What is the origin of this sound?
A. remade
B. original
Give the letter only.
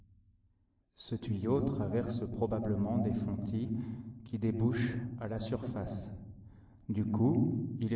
B